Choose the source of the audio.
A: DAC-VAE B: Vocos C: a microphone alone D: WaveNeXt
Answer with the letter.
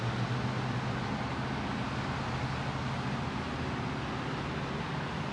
C